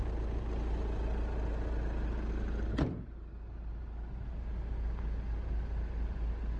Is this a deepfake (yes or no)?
no